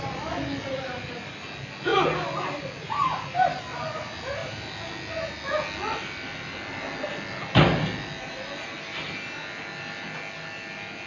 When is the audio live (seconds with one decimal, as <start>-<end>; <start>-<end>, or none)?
0.0-0.7; 1.4-11.1